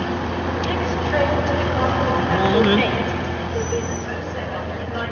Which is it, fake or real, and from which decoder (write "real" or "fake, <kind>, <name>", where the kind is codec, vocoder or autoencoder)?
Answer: real